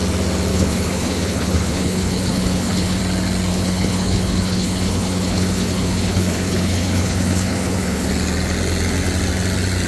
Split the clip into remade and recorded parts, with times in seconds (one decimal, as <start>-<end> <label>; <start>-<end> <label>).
0.0-0.5 recorded; 0.5-3.0 remade; 3.0-3.5 recorded; 3.5-8.1 remade; 8.1-9.9 recorded